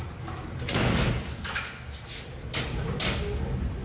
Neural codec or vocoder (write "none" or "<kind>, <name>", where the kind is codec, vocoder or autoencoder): none